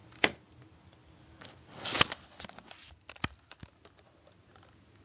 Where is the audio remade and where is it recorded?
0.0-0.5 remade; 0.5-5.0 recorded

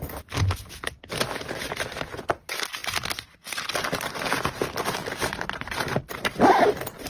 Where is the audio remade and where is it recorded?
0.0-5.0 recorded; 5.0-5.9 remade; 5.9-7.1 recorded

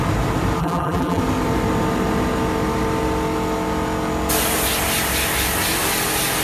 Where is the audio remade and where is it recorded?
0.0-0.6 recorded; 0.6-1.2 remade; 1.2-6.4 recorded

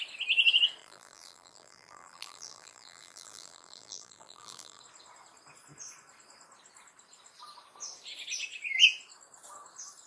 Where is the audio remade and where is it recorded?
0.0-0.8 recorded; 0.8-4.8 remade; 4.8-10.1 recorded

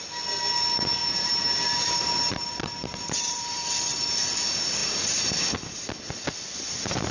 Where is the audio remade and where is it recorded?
0.0-1.0 recorded; 1.0-3.7 remade; 3.7-4.8 recorded; 4.8-5.9 remade; 5.9-7.1 recorded

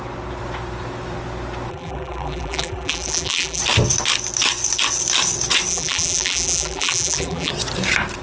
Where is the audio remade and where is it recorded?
0.0-1.7 recorded; 1.7-3.6 remade; 3.6-5.7 recorded; 5.7-7.5 remade; 7.5-8.2 recorded

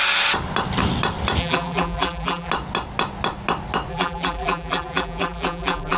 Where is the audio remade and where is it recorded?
0.0-1.4 recorded; 1.4-2.5 remade; 2.5-3.9 recorded; 3.9-6.0 remade

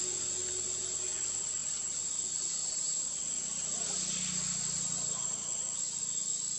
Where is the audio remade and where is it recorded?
0.0-2.6 recorded; 2.6-3.2 remade; 3.2-6.6 recorded